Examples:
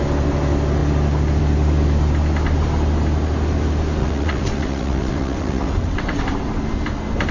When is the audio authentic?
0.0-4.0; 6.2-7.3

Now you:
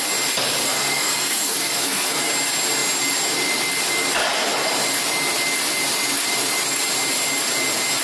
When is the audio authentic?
0.0-0.6; 2.3-8.0

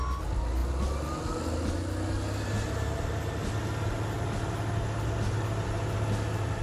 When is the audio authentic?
0.0-6.6

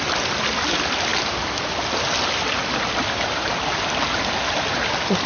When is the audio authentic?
0.0-5.3

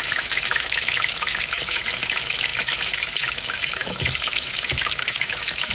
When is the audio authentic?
none

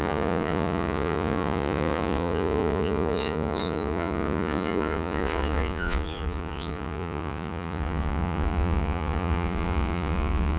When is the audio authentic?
none